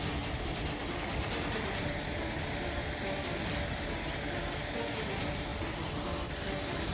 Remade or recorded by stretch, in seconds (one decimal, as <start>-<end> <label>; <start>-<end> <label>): 0.0-6.9 recorded

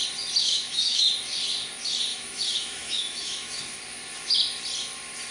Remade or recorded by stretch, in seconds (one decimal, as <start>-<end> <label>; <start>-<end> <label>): 0.0-0.4 recorded; 0.4-1.1 remade; 1.1-2.1 recorded; 2.1-3.6 remade; 3.6-5.3 recorded

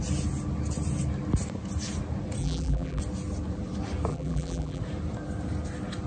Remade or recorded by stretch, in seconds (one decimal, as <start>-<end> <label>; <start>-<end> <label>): 0.0-2.4 recorded; 2.4-3.0 remade; 3.0-4.1 recorded; 4.1-4.8 remade; 4.8-6.1 recorded

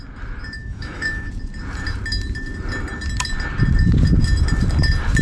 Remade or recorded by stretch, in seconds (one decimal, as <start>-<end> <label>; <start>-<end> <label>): 0.0-0.6 recorded; 0.6-1.3 remade; 1.3-5.2 recorded

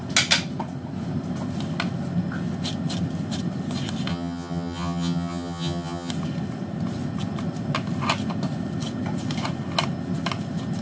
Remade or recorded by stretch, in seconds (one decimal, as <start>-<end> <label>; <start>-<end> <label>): 0.0-4.1 recorded; 4.1-6.1 remade; 6.1-10.8 recorded

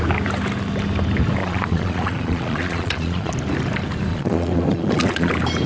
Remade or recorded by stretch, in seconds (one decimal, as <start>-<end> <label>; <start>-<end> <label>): 0.0-1.4 recorded; 1.4-3.3 remade; 3.3-4.1 recorded; 4.1-5.3 remade; 5.3-5.7 recorded

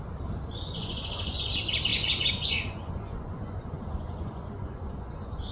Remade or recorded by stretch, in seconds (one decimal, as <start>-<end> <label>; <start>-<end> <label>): 0.0-0.5 recorded; 0.5-1.5 remade; 1.5-1.9 recorded; 1.9-5.5 remade

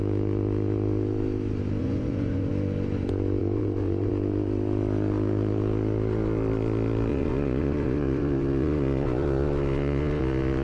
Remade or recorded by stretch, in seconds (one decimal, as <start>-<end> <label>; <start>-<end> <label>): 0.0-1.8 recorded; 1.8-2.5 remade; 2.5-3.4 recorded; 3.4-4.1 remade; 4.1-7.1 recorded; 7.1-10.2 remade; 10.2-10.6 recorded